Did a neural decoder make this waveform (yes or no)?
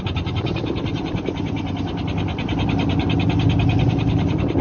no